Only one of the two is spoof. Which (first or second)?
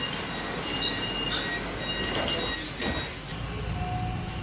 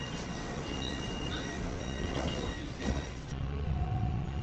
second